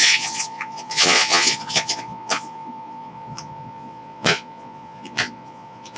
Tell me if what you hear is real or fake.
fake